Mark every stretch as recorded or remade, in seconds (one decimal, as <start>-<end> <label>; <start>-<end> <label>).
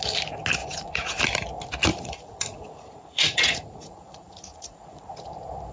0.0-0.6 recorded; 0.6-1.2 remade; 1.2-1.9 recorded; 1.9-5.3 remade; 5.3-5.7 recorded